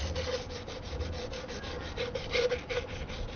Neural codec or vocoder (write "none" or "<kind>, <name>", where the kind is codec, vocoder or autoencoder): none